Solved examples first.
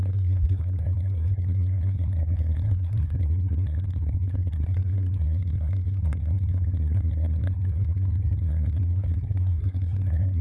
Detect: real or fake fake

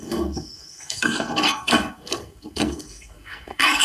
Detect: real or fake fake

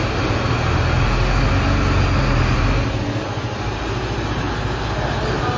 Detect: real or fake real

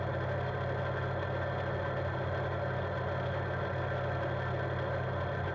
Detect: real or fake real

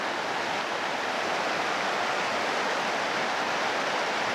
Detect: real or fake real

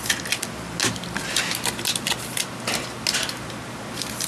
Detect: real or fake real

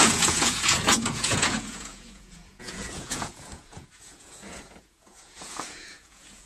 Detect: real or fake fake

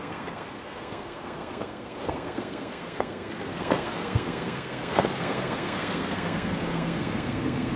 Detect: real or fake fake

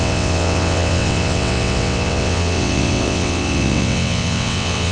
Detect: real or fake fake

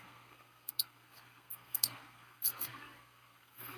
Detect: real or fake fake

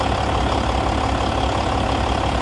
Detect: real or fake real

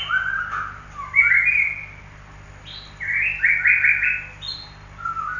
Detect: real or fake real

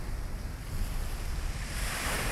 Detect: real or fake real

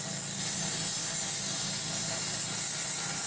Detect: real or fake real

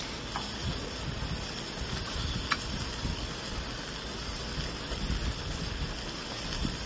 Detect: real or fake real